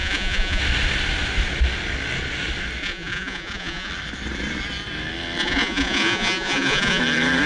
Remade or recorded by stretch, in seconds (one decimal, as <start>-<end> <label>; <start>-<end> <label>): 0.0-0.6 remade; 0.6-2.8 recorded; 2.8-3.9 remade; 3.9-5.4 recorded; 5.4-7.0 remade; 7.0-7.5 recorded